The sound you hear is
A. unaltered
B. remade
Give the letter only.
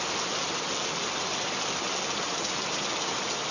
A